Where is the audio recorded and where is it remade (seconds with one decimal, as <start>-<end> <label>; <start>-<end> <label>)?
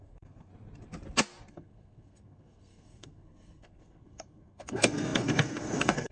0.0-0.5 remade; 0.5-1.5 recorded; 1.5-6.1 remade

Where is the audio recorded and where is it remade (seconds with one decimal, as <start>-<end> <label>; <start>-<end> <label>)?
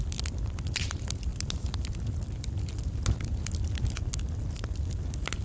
0.0-5.4 recorded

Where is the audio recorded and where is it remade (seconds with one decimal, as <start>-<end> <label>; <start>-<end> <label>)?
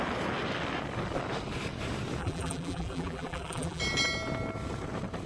0.0-2.2 recorded; 2.2-3.8 remade; 3.8-5.3 recorded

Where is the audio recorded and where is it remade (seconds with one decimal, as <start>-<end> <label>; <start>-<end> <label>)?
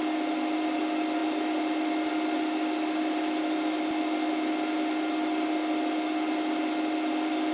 0.0-7.5 recorded